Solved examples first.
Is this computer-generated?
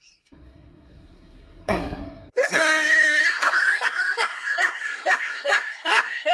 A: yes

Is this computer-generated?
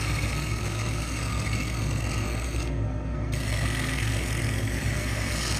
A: yes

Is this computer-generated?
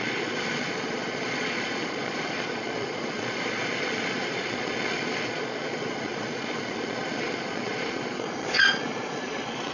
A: yes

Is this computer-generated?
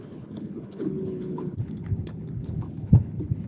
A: yes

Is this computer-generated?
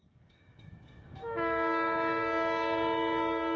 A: yes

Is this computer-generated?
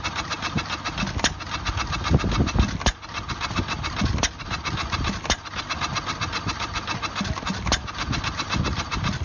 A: no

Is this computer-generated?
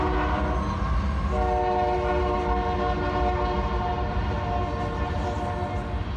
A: no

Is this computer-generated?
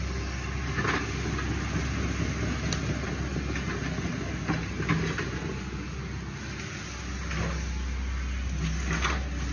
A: no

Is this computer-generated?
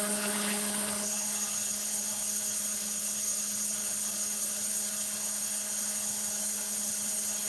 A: yes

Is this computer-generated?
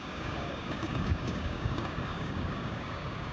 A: yes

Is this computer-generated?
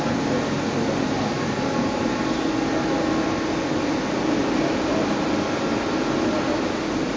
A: no